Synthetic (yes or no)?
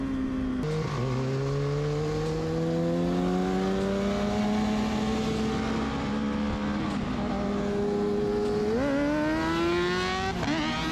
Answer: no